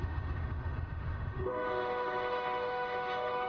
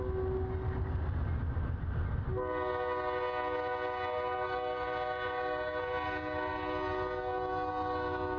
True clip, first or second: second